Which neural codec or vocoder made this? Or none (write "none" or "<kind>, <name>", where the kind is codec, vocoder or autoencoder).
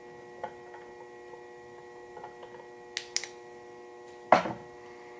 none